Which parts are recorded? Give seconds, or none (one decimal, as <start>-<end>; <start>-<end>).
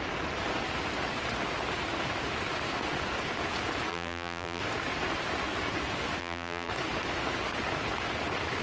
0.0-3.9; 4.6-6.2; 6.7-8.6